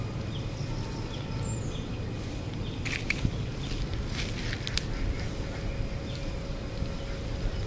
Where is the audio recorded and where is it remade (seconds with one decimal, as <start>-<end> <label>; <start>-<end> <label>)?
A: 0.0-7.7 recorded